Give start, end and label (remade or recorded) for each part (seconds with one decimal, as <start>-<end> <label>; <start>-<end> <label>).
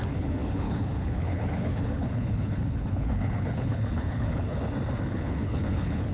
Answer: 0.0-4.6 remade; 4.6-5.1 recorded; 5.1-6.1 remade